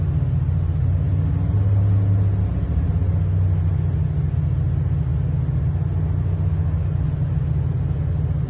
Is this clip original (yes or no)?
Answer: yes